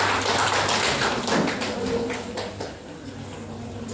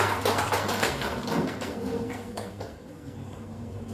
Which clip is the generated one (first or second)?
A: second